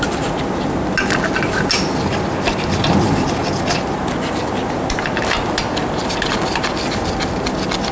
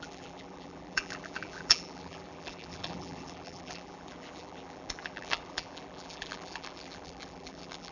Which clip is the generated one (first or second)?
second